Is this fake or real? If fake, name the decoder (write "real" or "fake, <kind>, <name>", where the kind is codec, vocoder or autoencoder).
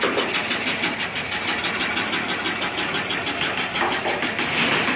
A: real